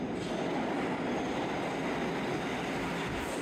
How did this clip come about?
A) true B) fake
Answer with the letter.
A